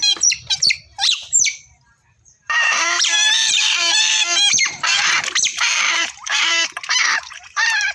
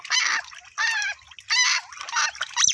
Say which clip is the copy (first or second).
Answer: first